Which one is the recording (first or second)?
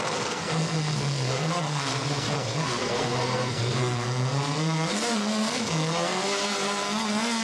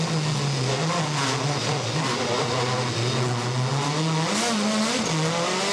second